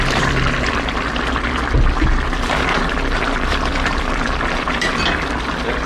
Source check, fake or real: fake